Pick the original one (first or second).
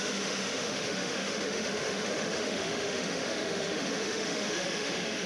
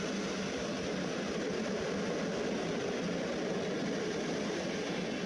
second